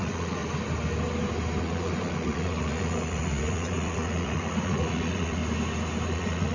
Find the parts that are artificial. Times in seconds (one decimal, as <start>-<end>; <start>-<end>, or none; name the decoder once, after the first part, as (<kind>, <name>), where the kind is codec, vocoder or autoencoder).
0.0-0.4 (vocoder, Vocos); 1.6-5.4; 6.1-6.5